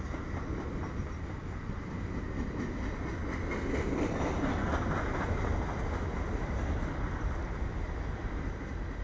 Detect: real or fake real